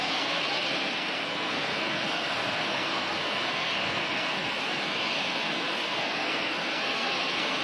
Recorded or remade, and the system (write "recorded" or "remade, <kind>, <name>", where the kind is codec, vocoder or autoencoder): remade, codec, SNAC